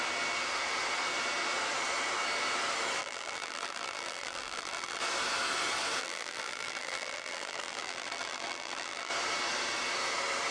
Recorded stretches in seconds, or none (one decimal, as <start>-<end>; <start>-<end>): 0.0-3.0; 5.0-6.0; 9.1-10.5